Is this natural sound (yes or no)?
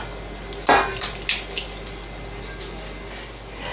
yes